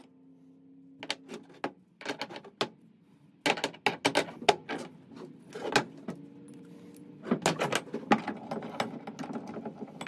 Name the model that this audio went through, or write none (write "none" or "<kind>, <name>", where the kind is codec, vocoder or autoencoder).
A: none